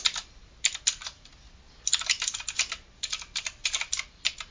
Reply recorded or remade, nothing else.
recorded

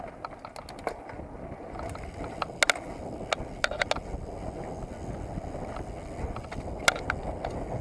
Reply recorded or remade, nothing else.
recorded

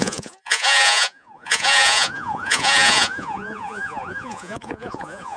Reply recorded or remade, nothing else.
remade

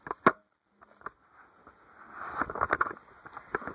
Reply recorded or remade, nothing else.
recorded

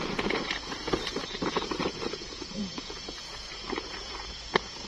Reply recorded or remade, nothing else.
remade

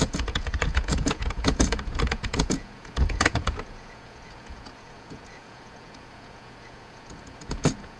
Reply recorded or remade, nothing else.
remade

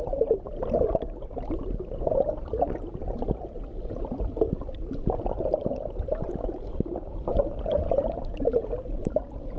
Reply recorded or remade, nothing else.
recorded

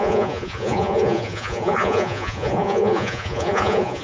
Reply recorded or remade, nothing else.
remade